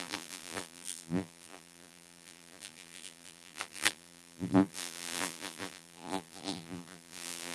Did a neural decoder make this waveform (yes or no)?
yes